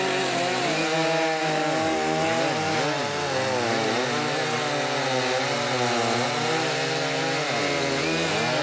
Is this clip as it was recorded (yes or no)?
yes